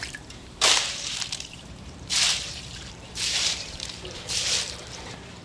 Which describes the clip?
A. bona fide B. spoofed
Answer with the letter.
B